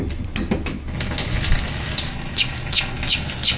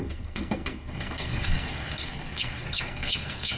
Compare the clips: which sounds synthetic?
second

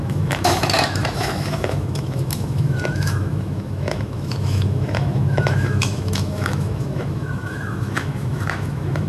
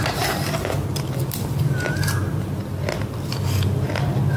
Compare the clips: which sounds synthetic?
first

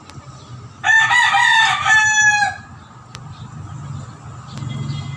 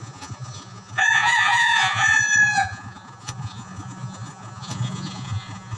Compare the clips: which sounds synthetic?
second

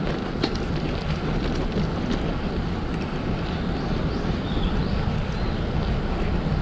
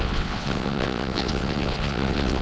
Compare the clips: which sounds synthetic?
second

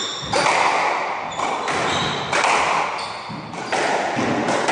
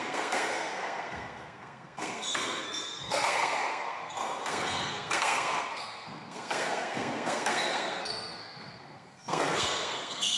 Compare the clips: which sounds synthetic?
second